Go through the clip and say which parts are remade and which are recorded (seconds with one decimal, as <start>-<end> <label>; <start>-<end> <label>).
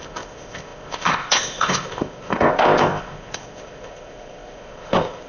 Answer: 0.0-5.3 remade